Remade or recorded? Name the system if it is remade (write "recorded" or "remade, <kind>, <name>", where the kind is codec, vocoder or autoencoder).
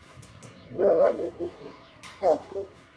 remade, codec, SNAC